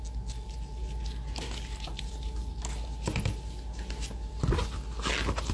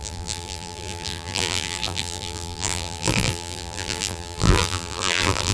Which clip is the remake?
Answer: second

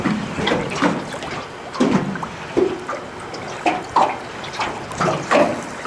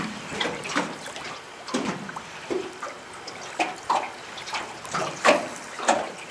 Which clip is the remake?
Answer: second